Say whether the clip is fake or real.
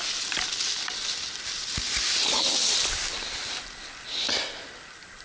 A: real